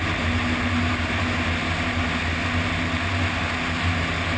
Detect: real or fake real